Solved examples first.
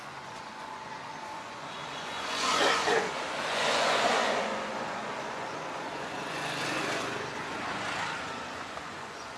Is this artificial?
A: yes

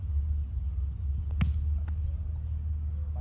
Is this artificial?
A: no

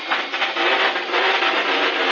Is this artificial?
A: no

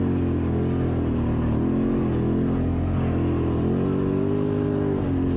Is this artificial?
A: no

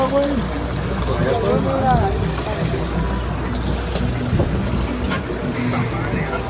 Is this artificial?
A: no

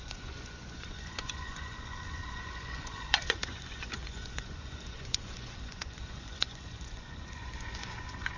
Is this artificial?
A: yes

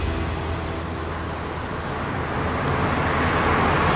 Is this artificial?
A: no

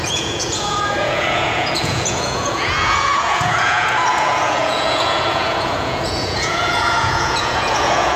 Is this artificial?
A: yes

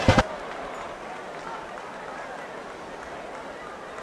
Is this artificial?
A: no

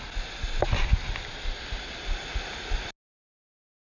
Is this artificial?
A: no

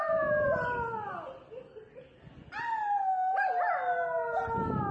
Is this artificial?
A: no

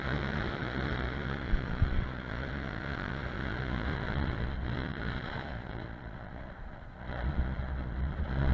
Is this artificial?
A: yes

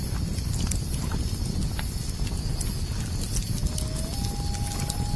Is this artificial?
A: no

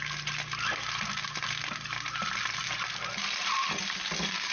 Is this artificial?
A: no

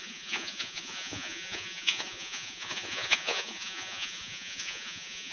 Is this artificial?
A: yes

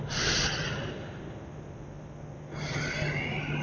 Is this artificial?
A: no